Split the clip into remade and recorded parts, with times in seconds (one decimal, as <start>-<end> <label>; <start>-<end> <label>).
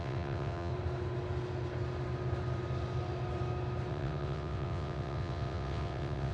0.0-0.7 remade; 0.7-3.9 recorded; 3.9-6.3 remade